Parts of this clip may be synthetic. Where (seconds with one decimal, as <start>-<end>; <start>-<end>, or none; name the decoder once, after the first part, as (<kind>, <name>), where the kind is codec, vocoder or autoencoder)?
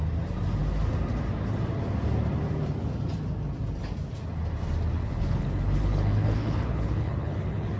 4.9-7.8 (codec, HILCodec)